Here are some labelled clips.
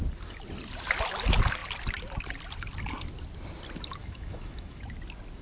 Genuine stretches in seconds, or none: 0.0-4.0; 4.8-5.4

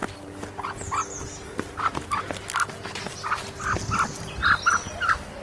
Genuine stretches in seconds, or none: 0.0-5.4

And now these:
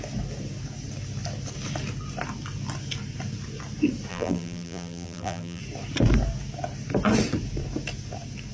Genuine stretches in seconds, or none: 0.0-4.1; 5.6-8.5